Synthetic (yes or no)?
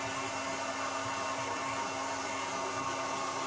no